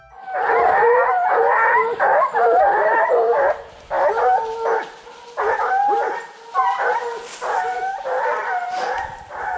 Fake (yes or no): no